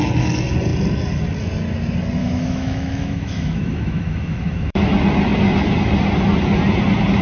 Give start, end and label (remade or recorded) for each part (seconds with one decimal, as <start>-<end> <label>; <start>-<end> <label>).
0.0-2.2 recorded; 2.2-4.8 remade; 4.8-7.2 recorded